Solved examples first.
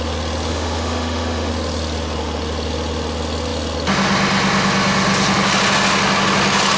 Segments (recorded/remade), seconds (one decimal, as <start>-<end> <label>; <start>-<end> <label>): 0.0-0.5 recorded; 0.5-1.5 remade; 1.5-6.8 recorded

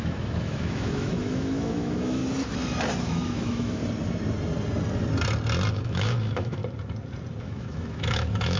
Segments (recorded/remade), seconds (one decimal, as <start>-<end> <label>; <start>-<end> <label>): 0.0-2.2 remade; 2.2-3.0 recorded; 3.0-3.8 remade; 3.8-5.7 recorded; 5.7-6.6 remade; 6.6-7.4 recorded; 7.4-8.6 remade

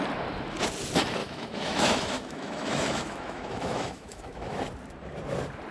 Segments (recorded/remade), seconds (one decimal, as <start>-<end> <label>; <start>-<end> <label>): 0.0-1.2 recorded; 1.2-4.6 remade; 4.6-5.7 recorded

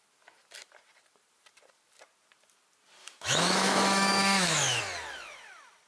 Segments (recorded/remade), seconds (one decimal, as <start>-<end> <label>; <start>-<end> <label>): 0.0-3.0 recorded; 3.0-4.8 remade; 4.8-5.9 recorded

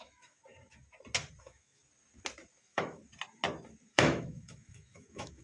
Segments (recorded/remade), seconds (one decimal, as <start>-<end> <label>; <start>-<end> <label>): 0.0-0.4 remade; 0.4-1.4 recorded; 1.4-1.8 remade; 1.8-2.6 recorded; 2.6-3.0 remade; 3.0-3.9 recorded; 3.9-5.4 remade

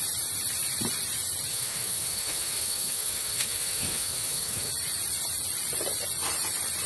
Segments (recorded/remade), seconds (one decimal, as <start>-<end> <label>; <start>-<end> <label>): 0.0-1.5 recorded; 1.5-4.7 remade; 4.7-6.9 recorded

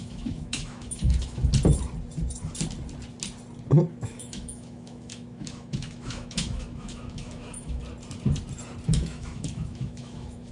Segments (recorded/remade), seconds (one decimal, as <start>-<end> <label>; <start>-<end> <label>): 0.0-1.5 remade; 1.5-3.9 recorded; 3.9-7.8 remade; 7.8-8.9 recorded; 8.9-10.5 remade

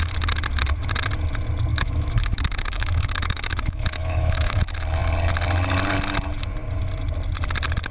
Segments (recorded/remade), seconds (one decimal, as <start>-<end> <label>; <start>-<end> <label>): 0.0-1.7 recorded; 1.7-4.6 remade; 4.6-7.9 recorded